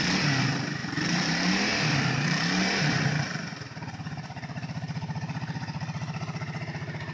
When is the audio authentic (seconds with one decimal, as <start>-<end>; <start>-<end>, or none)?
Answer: none